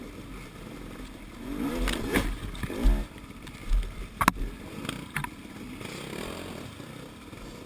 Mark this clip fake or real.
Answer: real